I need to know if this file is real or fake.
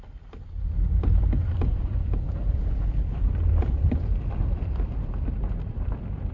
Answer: fake